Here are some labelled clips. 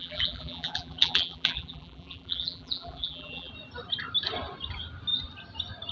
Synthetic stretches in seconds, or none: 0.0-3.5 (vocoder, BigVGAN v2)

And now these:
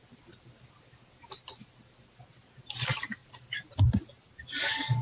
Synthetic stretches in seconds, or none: none

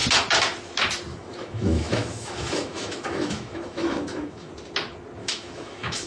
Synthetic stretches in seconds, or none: 1.1-4.5 (autoencoder, DAC-VAE); 5.2-6.1

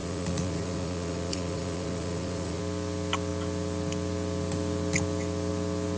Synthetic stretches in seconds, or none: 0.0-2.6 (vocoder, Vocos)